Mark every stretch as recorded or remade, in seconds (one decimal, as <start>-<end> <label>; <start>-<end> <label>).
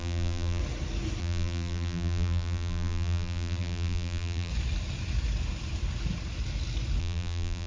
0.0-0.6 remade; 0.6-1.2 recorded; 1.2-4.5 remade; 4.5-7.0 recorded; 7.0-7.7 remade